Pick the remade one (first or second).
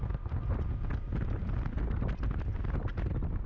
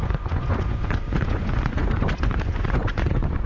second